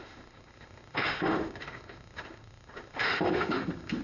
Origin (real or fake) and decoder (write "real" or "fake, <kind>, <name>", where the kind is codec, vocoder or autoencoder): fake, autoencoder, DAC-VAE